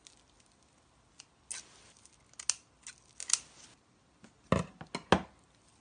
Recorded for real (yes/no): yes